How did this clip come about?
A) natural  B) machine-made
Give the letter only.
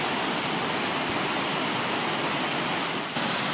A